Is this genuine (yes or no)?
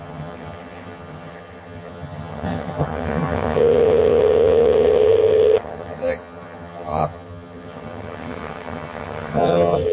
no